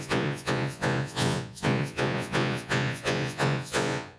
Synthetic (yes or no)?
yes